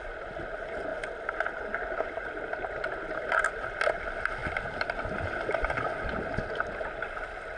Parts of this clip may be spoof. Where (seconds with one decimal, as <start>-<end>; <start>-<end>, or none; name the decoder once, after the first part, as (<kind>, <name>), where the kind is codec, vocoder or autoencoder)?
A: none